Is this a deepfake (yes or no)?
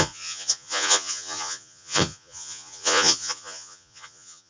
yes